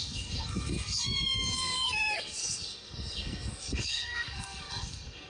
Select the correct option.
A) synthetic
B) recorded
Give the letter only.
A